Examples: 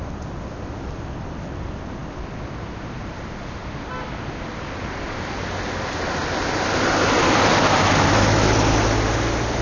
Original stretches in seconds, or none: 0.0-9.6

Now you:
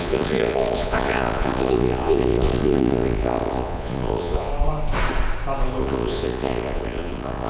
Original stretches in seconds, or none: 4.5-5.8